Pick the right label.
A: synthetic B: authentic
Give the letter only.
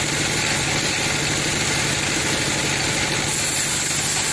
B